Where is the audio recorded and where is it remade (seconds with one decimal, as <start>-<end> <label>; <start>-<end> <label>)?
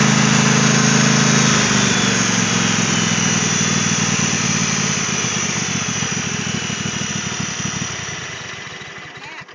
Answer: 0.0-9.5 recorded